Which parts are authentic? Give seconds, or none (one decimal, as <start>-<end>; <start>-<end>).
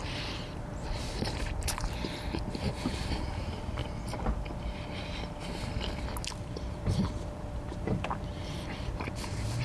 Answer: 3.8-6.3